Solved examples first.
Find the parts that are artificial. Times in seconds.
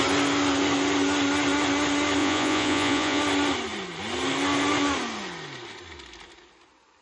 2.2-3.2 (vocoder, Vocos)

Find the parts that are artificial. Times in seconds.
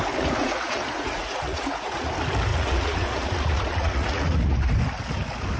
0.4-2.1 (vocoder, Vocos); 2.5-4.6